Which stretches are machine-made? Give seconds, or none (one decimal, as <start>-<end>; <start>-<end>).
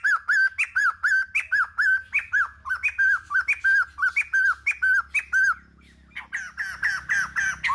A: none